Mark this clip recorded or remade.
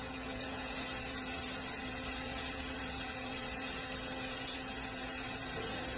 remade